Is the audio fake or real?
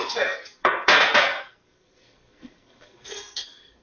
fake